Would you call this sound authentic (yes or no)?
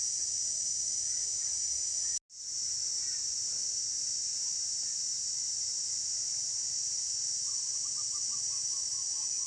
yes